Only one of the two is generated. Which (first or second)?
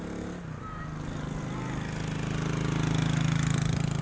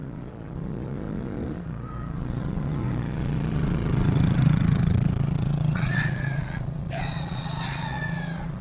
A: second